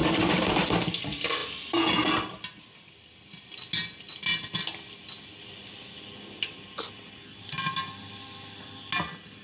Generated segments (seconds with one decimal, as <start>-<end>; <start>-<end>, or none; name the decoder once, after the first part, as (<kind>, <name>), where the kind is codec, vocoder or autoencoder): 0.0-0.8 (vocoder, BigVGAN v2)